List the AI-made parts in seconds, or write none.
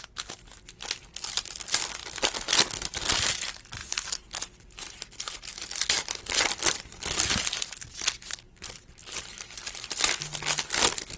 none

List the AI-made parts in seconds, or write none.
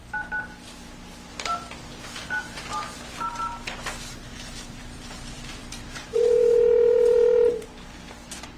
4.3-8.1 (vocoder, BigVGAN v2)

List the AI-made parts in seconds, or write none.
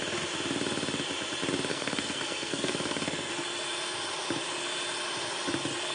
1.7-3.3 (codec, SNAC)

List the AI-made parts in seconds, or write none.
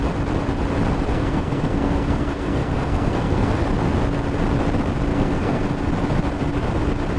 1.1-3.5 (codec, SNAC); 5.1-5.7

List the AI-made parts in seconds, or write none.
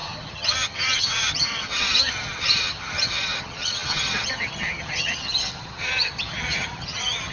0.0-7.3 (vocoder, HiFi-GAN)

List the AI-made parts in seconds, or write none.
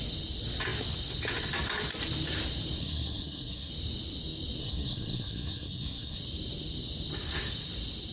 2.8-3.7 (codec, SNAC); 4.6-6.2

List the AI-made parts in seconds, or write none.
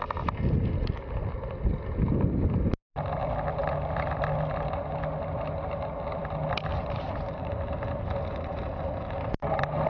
none